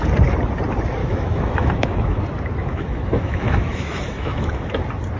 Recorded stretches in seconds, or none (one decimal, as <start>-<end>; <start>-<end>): 0.0-1.0; 2.2-2.6; 4.8-5.2